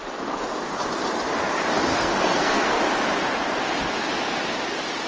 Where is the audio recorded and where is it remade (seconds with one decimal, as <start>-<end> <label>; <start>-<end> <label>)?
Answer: 0.0-1.9 recorded; 1.9-2.8 remade; 2.8-5.1 recorded